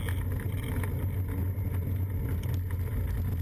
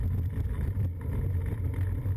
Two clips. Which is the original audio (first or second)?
first